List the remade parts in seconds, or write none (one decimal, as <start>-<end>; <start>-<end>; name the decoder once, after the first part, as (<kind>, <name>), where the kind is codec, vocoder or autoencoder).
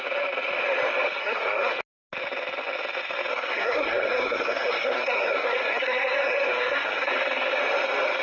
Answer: 1.2-1.7 (codec, SNAC); 3.3-7.1